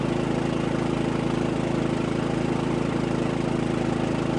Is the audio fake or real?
real